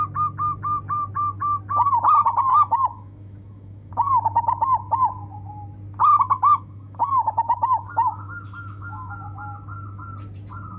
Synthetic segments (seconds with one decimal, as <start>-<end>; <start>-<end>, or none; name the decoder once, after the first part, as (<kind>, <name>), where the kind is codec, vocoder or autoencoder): 2.5-3.9 (autoencoder, DAC-VAE); 6.5-9.1